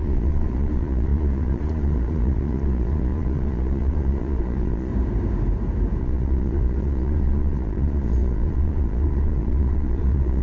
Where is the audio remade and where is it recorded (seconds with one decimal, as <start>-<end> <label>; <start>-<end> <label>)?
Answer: 0.0-4.9 remade; 4.9-6.0 recorded; 6.0-10.4 remade